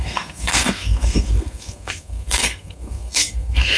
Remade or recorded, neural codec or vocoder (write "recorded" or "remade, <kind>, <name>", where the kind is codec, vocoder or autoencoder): remade, codec, SNAC